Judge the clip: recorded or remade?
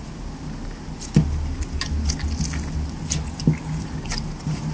recorded